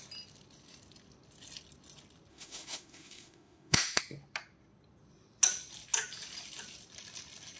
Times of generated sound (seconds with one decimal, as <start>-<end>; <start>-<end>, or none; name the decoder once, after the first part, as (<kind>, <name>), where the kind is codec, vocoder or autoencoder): 2.3-4.0 (autoencoder, DAC-VAE)